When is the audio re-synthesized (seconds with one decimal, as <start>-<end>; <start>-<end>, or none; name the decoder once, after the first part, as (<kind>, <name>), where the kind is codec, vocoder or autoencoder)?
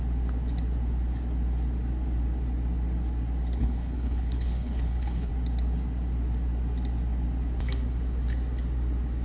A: 3.6-5.3 (codec, HILCodec)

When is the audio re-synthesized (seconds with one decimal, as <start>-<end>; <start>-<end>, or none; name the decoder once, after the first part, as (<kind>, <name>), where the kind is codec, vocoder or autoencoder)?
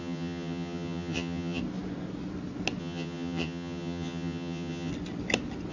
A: 0.0-1.6 (vocoder, HiFi-GAN); 2.8-4.9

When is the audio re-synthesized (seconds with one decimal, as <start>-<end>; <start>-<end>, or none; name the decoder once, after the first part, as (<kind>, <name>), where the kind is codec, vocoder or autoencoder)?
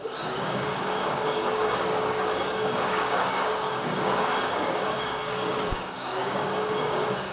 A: 0.0-7.3 (codec, DAC)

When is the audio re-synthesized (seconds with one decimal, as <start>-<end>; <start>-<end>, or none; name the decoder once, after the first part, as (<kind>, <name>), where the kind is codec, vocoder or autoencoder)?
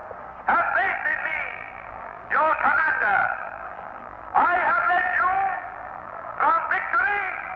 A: 0.7-7.6 (vocoder, BigVGAN v2)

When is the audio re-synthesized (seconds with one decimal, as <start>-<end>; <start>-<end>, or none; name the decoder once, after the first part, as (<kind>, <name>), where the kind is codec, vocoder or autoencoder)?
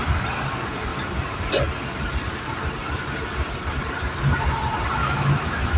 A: 5.0-5.8 (autoencoder, DAC-VAE)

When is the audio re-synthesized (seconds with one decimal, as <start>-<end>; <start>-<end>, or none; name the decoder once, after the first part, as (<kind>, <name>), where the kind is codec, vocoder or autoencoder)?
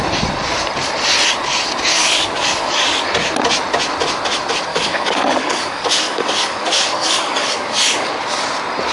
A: 1.9-3.0 (codec, DAC); 4.7-8.1